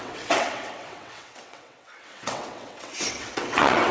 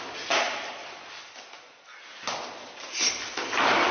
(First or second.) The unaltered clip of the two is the second